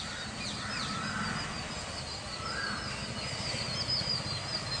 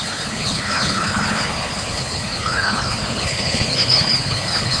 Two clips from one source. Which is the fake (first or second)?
second